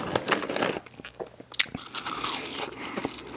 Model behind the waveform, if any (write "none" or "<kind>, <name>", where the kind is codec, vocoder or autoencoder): none